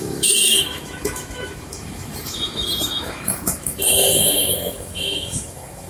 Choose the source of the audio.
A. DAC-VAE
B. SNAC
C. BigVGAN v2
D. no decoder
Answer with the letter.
A